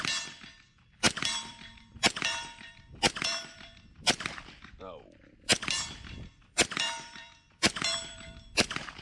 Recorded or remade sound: remade